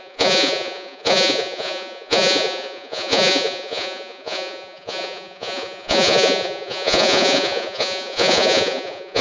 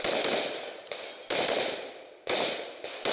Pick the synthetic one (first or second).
first